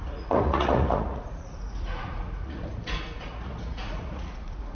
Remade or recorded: remade